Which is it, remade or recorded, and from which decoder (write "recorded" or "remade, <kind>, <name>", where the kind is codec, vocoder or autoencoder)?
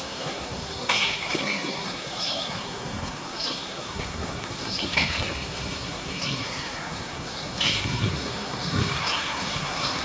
remade, codec, SNAC